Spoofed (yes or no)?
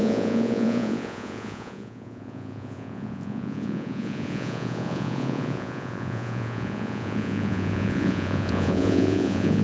yes